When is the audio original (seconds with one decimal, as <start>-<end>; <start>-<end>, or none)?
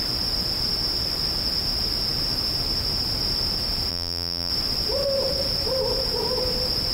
0.0-3.9; 4.5-6.9